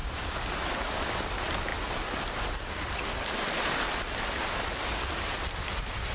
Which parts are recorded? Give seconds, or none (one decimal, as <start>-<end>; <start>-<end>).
0.5-6.1